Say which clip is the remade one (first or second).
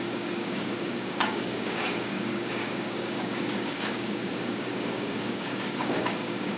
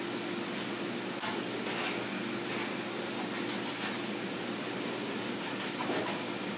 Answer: first